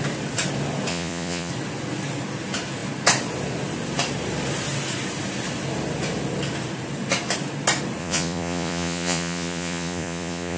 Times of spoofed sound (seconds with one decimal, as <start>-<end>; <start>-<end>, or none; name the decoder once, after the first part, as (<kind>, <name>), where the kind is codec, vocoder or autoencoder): 0.9-1.5 (vocoder, Vocos); 8.0-10.6